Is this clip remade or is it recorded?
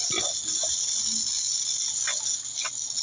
recorded